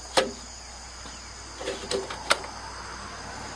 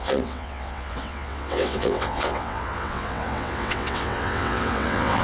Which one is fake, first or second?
second